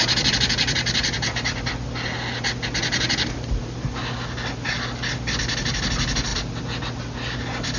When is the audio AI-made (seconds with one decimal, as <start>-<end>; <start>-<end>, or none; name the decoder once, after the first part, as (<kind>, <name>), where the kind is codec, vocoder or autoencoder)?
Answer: none